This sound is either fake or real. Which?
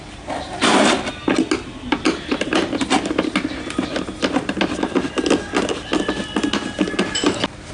real